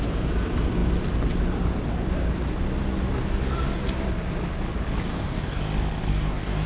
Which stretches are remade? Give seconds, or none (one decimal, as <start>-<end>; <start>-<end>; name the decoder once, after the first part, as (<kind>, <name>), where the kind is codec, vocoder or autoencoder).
5.1-5.6 (codec, DAC); 6.1-6.7